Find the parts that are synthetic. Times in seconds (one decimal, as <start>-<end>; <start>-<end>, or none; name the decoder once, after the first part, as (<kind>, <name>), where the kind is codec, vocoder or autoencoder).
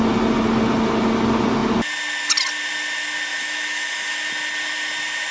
3.3-4.3 (autoencoder, DAC-VAE)